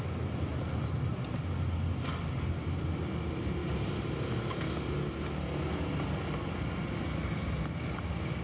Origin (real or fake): real